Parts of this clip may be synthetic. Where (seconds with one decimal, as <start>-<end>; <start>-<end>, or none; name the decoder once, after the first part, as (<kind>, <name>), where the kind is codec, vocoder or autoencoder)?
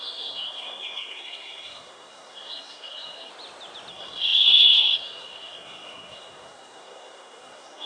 0.0-3.3 (codec, SNAC); 3.9-7.9